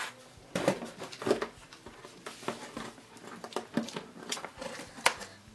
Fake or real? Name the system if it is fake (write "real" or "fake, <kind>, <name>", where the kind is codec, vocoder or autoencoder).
fake, vocoder, BigVGAN v2